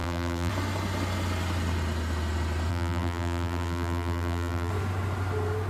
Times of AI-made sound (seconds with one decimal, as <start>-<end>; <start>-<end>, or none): 0.0-0.5; 2.7-4.7